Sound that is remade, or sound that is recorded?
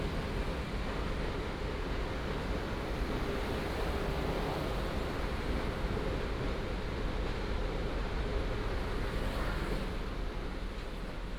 recorded